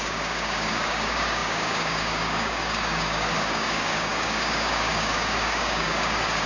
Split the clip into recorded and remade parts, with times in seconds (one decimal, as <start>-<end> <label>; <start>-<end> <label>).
0.0-6.5 remade